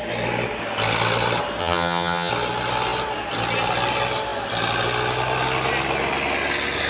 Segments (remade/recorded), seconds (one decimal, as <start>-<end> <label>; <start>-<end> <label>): 0.0-1.6 recorded; 1.6-2.3 remade; 2.3-6.9 recorded